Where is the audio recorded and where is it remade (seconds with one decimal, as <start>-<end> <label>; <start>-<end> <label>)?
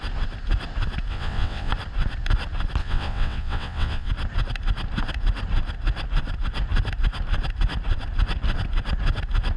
0.0-1.1 recorded; 1.1-1.7 remade; 1.7-2.8 recorded; 2.8-4.1 remade; 4.1-9.6 recorded